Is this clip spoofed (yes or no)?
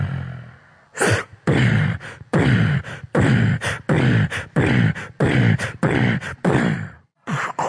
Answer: no